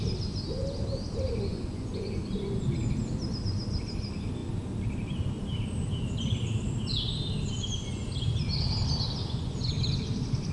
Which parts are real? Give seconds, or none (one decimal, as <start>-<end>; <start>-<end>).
0.0-1.5; 2.1-9.2; 9.7-10.5